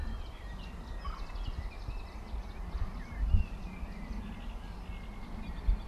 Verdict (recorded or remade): recorded